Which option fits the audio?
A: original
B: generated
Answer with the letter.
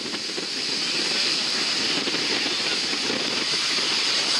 B